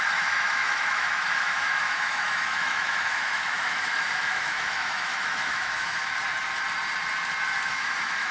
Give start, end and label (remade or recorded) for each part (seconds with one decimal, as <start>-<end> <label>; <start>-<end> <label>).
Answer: 0.0-6.0 remade; 6.0-7.7 recorded; 7.7-8.3 remade